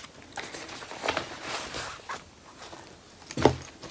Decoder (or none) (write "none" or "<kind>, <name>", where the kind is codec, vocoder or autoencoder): none